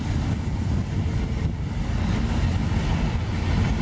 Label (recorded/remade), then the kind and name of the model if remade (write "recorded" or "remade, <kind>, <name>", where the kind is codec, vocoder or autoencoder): recorded